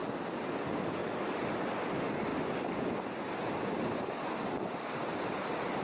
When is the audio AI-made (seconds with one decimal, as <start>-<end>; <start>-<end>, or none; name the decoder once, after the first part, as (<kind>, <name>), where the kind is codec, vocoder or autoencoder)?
1.0-1.8 (vocoder, BigVGAN v2)